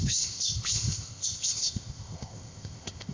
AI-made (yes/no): yes